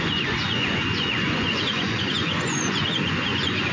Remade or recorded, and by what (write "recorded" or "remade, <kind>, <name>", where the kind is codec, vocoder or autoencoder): remade, vocoder, Vocos